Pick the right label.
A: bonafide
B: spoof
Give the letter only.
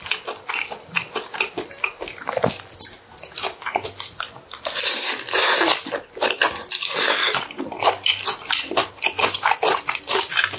A